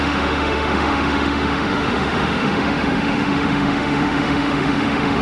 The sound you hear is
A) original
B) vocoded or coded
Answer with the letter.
B